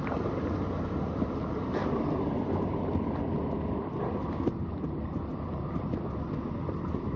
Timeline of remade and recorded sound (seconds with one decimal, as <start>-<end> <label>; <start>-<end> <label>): 0.0-7.2 recorded